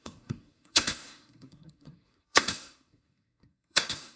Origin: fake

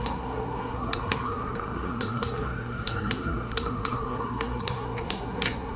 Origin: fake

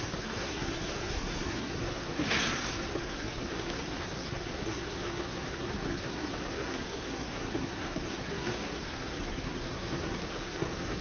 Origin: fake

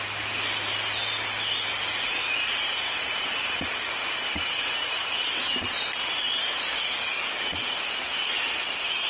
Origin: real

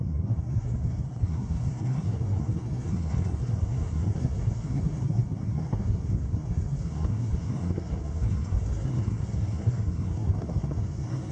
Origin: fake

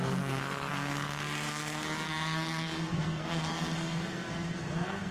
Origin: fake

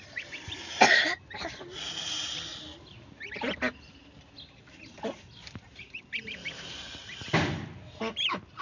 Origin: real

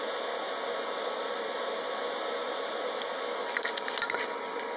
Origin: real